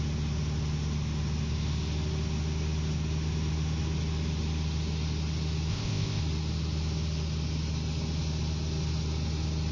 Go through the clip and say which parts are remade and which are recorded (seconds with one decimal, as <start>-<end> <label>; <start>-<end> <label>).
0.0-5.7 recorded; 5.7-6.2 remade; 6.2-9.7 recorded